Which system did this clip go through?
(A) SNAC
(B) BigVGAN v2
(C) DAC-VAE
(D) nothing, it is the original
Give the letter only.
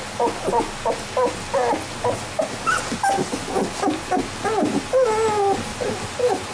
D